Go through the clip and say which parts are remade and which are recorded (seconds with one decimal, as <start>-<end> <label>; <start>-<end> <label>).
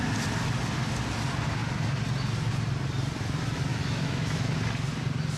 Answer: 0.0-3.7 recorded; 3.7-4.5 remade; 4.5-5.4 recorded